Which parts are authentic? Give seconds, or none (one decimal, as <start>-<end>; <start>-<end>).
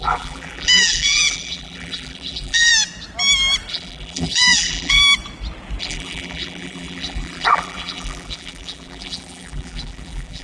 2.7-3.7; 5.0-5.8